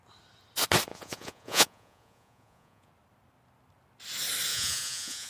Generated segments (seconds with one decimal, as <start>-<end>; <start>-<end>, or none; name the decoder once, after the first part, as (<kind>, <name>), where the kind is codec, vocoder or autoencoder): 0.9-2.9 (vocoder, Vocos); 4.5-5.3